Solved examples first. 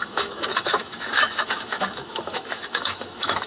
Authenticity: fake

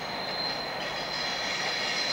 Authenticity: real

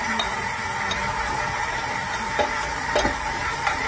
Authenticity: real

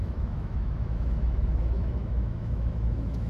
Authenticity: fake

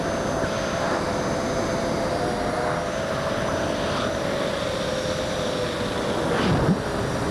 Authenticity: real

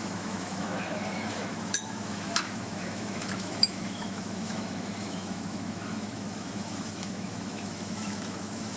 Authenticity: fake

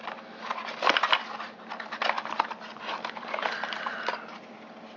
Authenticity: real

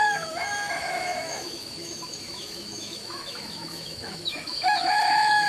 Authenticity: fake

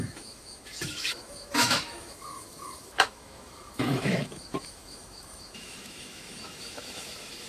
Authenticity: fake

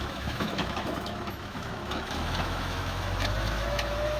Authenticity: fake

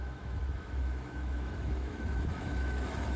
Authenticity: fake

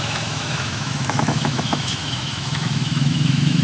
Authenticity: fake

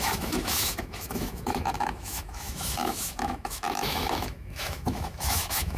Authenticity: fake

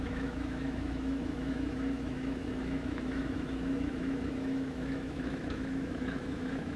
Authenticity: fake